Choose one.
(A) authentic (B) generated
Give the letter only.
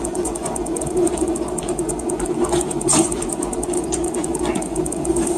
B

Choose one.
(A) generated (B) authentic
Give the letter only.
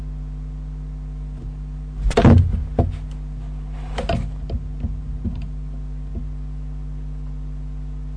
B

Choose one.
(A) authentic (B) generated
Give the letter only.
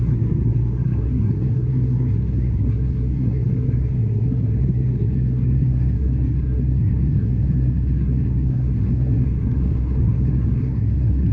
B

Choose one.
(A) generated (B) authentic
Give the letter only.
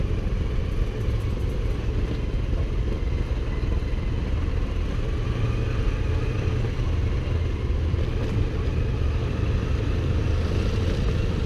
B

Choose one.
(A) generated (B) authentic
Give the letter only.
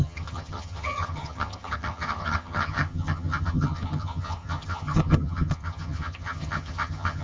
A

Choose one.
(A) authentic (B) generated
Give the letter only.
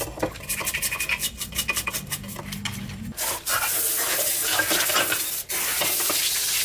A